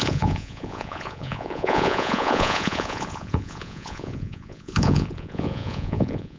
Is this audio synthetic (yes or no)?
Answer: yes